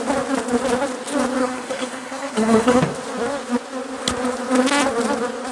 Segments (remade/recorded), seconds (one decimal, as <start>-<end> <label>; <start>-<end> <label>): 0.0-1.4 recorded; 1.4-2.8 remade; 2.8-5.5 recorded